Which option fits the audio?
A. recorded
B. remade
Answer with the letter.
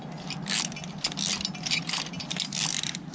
A